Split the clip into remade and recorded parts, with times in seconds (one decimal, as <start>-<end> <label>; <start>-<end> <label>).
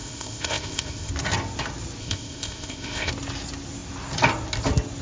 0.0-1.1 remade; 1.1-2.0 recorded; 2.0-3.1 remade; 3.1-5.0 recorded